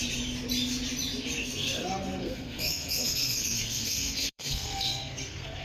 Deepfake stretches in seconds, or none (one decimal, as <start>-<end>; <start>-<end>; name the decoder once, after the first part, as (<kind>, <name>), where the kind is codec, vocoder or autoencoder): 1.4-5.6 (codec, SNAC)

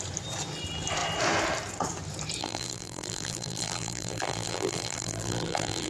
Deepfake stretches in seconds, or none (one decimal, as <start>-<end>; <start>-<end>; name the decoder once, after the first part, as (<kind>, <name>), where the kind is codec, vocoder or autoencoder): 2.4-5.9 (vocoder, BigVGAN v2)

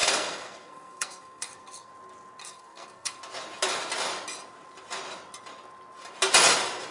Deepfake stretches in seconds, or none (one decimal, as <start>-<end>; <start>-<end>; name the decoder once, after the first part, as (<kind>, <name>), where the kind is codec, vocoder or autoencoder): 0.0-1.9 (codec, SNAC); 2.4-3.2

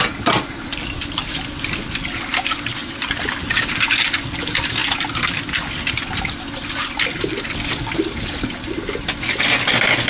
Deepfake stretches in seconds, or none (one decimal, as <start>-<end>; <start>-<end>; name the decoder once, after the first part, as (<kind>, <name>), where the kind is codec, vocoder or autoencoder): none